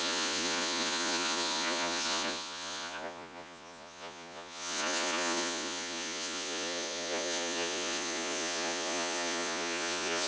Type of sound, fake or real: fake